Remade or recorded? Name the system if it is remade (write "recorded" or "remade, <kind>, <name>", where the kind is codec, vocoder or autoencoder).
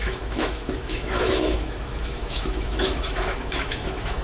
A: remade, autoencoder, DAC-VAE